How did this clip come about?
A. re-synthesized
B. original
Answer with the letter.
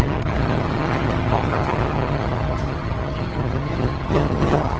A